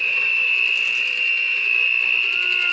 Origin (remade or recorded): recorded